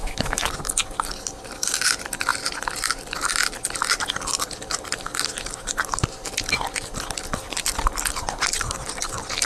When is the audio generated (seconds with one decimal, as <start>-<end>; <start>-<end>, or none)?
0.0-0.5